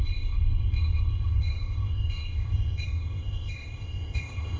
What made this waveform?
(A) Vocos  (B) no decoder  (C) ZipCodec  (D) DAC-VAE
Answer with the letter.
C